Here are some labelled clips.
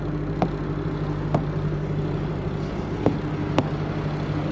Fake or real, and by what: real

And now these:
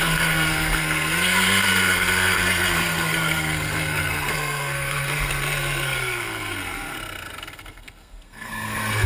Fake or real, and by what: fake, codec, SNAC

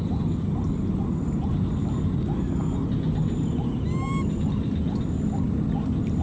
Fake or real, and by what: real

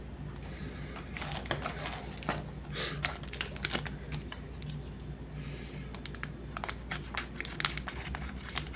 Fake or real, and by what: real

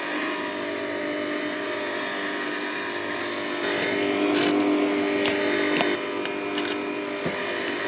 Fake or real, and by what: real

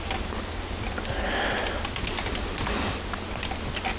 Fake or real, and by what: real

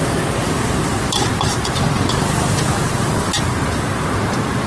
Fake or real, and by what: real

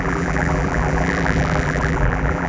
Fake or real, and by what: fake, vocoder, BigVGAN v2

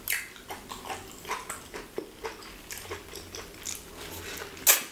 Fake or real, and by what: real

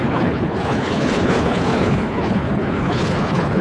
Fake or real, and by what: fake, codec, HILCodec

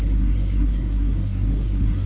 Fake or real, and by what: fake, codec, SNAC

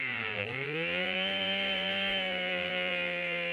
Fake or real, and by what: fake, vocoder, BigVGAN v2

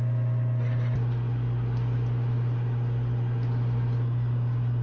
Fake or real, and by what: real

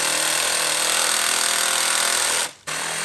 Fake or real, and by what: real